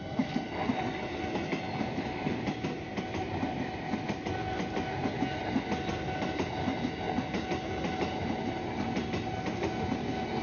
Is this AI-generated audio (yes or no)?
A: no